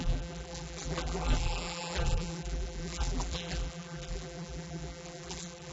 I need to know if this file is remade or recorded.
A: remade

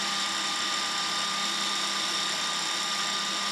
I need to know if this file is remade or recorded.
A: recorded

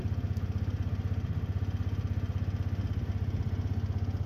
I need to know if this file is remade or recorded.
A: recorded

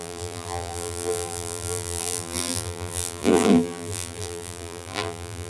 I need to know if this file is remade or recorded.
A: remade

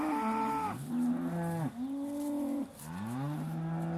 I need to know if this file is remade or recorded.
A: recorded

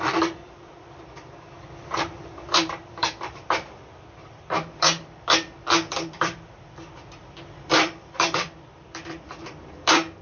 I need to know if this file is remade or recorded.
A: remade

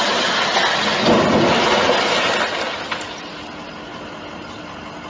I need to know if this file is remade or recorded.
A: recorded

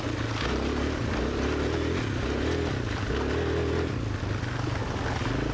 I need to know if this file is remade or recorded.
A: recorded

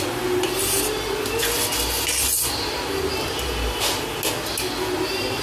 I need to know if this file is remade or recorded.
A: recorded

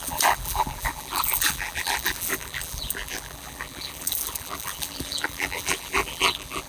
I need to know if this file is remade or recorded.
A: remade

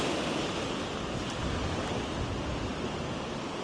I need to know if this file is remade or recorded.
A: recorded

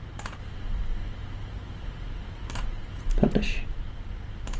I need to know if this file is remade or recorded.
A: remade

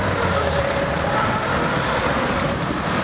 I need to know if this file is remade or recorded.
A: recorded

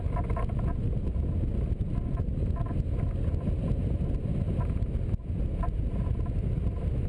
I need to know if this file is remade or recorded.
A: recorded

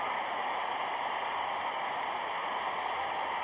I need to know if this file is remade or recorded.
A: recorded